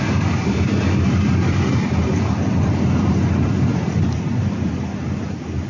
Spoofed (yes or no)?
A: no